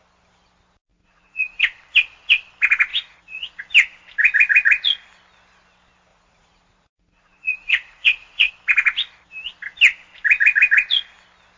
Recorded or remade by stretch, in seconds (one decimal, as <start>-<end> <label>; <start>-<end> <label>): 0.0-0.9 recorded; 0.9-1.6 remade; 1.6-2.9 recorded; 2.9-3.6 remade; 3.6-6.1 recorded; 6.1-8.5 remade; 8.5-11.6 recorded